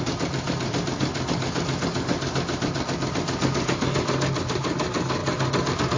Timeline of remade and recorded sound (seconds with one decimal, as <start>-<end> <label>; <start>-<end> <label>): 0.0-1.1 remade; 1.1-4.4 recorded; 4.4-5.2 remade; 5.2-6.0 recorded